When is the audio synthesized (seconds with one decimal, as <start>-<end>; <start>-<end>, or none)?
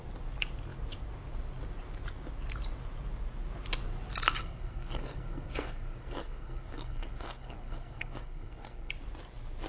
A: 4.4-8.9